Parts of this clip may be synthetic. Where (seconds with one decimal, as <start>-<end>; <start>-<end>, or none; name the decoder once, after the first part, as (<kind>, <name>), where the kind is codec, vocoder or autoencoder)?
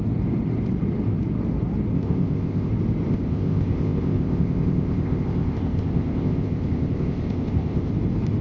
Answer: 1.9-2.7 (codec, ZipCodec); 3.1-7.9